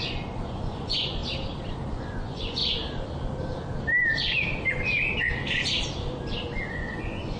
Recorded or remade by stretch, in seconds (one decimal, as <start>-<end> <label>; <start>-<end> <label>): 0.0-1.2 remade; 1.2-1.9 recorded; 1.9-2.6 remade; 2.6-6.7 recorded; 6.7-7.4 remade